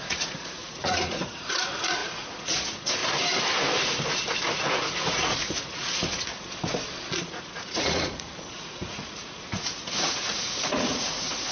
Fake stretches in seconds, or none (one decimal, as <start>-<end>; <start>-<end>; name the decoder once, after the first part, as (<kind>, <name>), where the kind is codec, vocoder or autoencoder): 0.0-3.0 (vocoder, Vocos); 4.7-6.3; 7.2-11.5